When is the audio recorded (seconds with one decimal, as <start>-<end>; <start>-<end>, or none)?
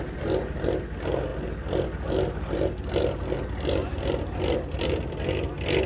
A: 0.0-5.9